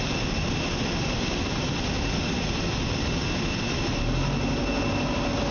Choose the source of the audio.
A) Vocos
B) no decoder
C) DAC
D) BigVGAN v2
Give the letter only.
B